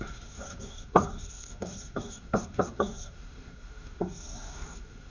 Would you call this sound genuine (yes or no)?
no